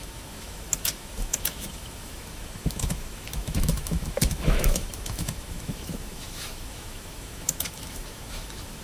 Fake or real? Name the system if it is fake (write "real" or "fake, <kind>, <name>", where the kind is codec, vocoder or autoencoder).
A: fake, autoencoder, DAC-VAE